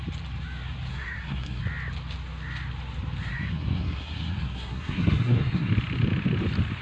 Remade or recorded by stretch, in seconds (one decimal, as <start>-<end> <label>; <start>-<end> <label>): 0.0-0.9 recorded; 0.9-1.6 remade; 1.6-3.3 recorded; 3.3-5.7 remade; 5.7-6.8 recorded